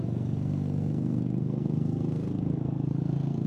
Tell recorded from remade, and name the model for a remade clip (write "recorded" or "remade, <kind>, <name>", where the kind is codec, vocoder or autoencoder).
remade, codec, SNAC